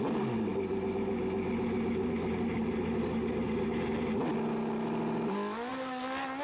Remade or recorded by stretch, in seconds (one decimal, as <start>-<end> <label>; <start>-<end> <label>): 0.0-6.4 recorded